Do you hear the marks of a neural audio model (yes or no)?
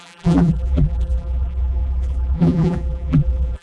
yes